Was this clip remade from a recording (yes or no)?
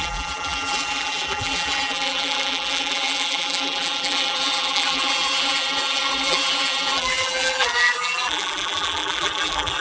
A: yes